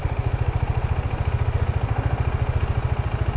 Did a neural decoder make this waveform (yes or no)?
no